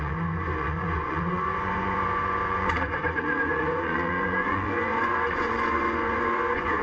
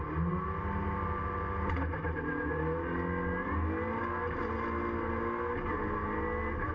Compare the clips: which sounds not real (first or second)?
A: first